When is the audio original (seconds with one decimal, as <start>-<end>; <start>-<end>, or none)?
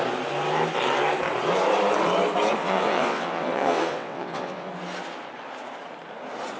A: 0.0-2.6; 4.7-6.6